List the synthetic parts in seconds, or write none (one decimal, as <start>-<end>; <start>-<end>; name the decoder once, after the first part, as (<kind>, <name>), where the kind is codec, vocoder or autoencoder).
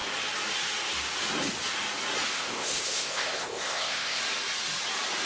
2.3-4.2 (codec, ZipCodec)